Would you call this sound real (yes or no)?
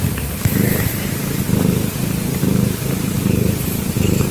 no